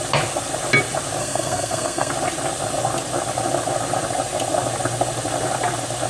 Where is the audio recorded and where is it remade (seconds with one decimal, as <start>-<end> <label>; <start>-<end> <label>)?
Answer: 0.0-1.2 recorded; 1.2-2.1 remade; 2.1-6.1 recorded